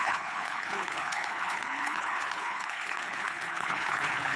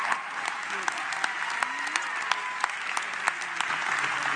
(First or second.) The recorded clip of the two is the second